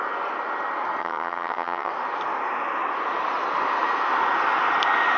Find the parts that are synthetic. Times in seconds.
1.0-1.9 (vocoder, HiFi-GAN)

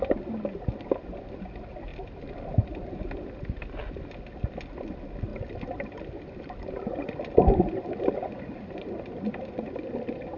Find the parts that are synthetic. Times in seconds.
none

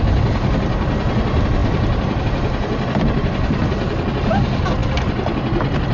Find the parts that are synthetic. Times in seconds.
none

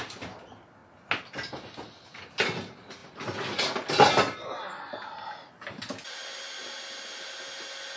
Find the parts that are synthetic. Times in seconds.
none